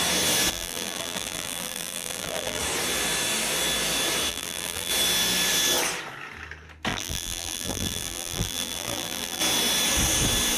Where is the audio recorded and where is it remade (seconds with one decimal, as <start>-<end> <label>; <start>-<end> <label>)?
0.0-0.5 recorded; 0.5-2.6 remade; 2.6-4.3 recorded; 4.3-4.9 remade; 4.9-6.9 recorded; 6.9-9.4 remade; 9.4-10.6 recorded